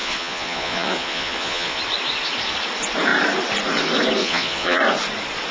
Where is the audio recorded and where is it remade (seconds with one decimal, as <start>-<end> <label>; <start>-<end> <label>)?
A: 0.0-1.8 remade; 1.8-4.2 recorded; 4.2-4.8 remade; 4.8-5.5 recorded